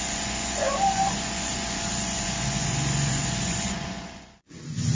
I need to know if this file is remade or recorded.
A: remade